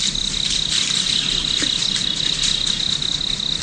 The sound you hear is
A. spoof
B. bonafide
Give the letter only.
B